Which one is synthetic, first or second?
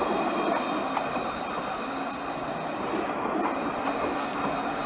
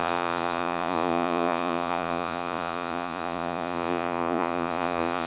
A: second